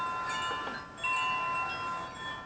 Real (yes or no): yes